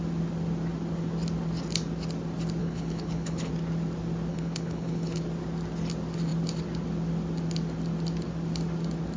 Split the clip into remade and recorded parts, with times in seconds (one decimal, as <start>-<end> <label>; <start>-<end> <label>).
0.0-2.6 recorded; 2.6-3.5 remade; 3.5-4.3 recorded; 4.3-5.2 remade; 5.2-9.2 recorded